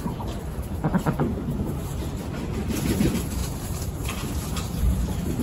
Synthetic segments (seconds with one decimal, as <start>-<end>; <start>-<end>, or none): 0.9-1.7; 3.4-5.4